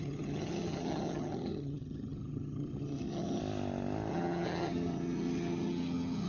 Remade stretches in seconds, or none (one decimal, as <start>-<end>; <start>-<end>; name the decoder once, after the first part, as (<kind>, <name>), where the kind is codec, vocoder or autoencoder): 0.0-3.4 (vocoder, HiFi-GAN); 4.1-6.3